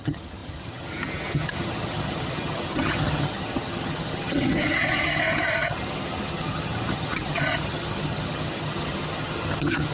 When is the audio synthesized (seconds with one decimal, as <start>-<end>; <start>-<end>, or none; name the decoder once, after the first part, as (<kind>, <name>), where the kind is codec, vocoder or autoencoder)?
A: 0.0-9.9 (vocoder, HiFi-GAN)